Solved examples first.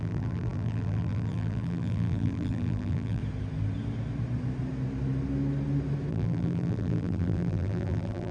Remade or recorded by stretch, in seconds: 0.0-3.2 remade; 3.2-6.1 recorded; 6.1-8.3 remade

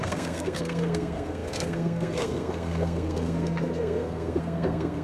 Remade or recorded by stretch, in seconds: 0.0-5.0 remade

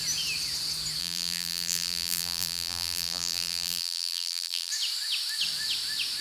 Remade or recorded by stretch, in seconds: 0.0-1.0 recorded; 1.0-4.7 remade; 4.7-6.2 recorded

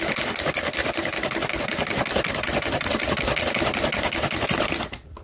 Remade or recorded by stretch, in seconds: 0.0-5.2 recorded

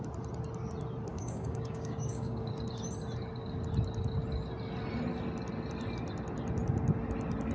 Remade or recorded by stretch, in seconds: 0.0-1.1 recorded; 1.1-2.5 remade; 2.5-7.5 recorded

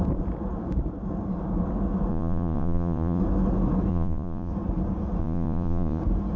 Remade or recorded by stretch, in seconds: 0.0-2.1 recorded; 2.1-3.2 remade; 3.2-3.9 recorded; 3.9-4.5 remade; 4.5-5.2 recorded; 5.2-6.0 remade; 6.0-6.4 recorded

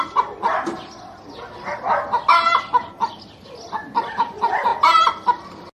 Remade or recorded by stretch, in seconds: 0.0-5.8 recorded

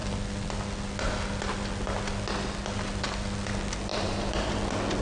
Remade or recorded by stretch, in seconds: 0.0-3.9 recorded; 3.9-4.6 remade; 4.6-5.0 recorded